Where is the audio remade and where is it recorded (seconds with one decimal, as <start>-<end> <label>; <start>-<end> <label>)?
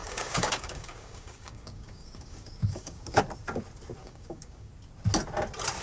0.0-3.2 remade; 3.2-4.0 recorded; 4.0-4.7 remade; 4.7-5.8 recorded